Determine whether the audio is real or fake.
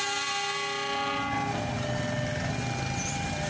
real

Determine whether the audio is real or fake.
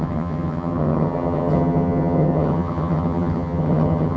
fake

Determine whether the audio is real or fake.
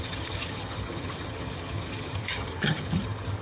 fake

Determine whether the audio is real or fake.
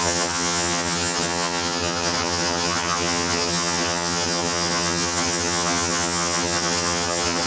fake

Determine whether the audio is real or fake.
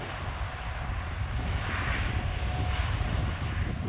real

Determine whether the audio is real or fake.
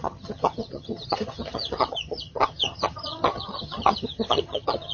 fake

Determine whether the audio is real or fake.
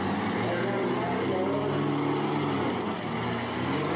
real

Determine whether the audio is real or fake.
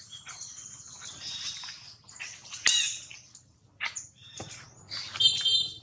real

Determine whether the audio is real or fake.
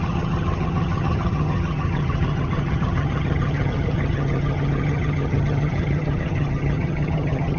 fake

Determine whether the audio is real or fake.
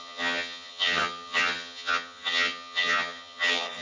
fake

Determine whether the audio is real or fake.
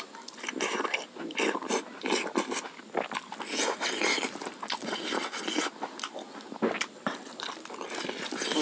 real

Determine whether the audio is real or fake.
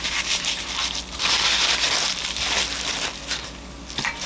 real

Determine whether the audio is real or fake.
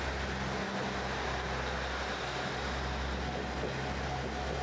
real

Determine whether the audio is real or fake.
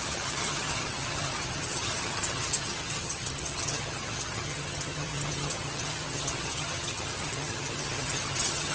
fake